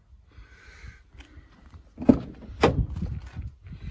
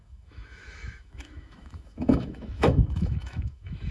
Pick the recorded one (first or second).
first